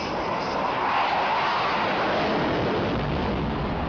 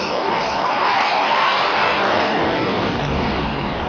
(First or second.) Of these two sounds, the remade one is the second